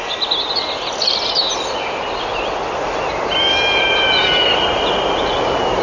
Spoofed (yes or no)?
no